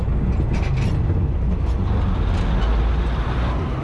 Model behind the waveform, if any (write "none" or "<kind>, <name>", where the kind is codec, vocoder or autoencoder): none